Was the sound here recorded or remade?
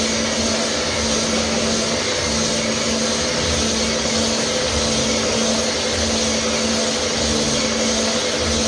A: recorded